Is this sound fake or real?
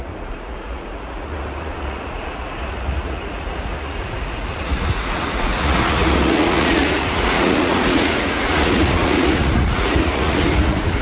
fake